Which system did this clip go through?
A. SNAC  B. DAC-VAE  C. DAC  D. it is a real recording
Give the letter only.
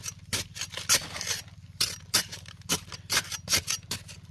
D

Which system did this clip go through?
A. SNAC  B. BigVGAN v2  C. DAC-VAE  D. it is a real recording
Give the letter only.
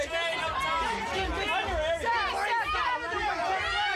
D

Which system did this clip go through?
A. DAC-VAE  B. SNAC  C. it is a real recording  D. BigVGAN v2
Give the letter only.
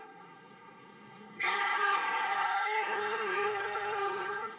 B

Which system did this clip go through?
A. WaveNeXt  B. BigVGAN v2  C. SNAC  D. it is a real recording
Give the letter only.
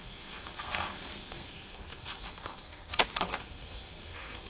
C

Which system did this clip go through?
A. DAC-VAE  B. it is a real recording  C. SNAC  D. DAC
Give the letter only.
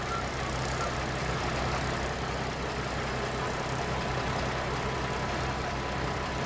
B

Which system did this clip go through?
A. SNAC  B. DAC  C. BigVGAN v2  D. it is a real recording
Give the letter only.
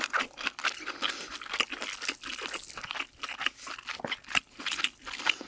D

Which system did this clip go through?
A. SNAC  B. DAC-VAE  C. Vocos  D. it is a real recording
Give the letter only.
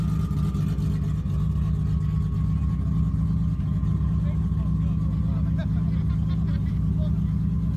D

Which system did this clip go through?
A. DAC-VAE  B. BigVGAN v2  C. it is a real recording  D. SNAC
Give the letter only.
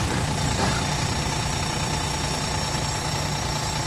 C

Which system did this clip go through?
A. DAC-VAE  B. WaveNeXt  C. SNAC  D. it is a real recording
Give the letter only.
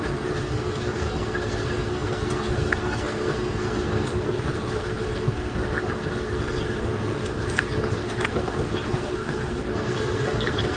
C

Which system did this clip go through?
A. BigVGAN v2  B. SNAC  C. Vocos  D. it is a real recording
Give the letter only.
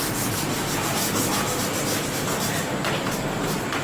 D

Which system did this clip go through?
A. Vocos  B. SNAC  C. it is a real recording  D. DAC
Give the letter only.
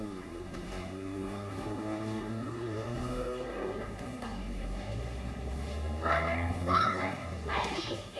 B